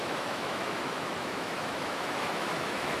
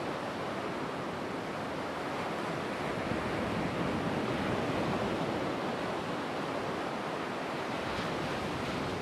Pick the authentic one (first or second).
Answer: second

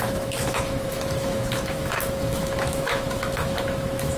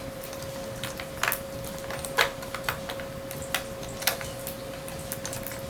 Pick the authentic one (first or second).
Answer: second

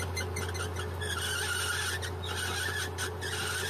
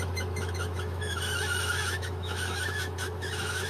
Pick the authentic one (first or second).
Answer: first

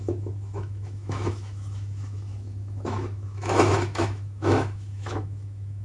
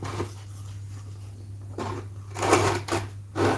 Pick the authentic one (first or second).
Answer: second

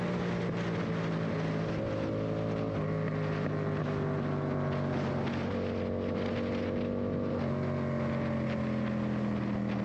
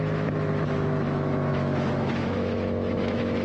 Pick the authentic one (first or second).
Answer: first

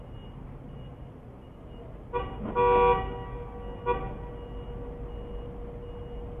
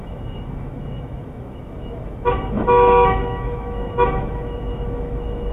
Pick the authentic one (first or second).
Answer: first